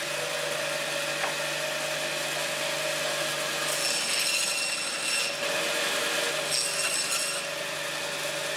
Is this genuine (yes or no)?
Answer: yes